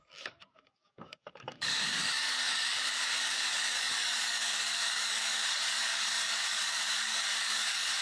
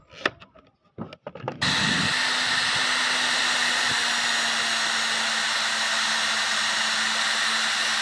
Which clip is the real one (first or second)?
second